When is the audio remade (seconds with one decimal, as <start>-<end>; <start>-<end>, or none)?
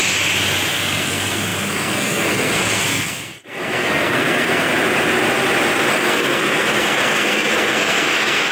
0.7-4.7; 5.9-8.5